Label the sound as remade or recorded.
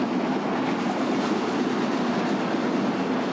recorded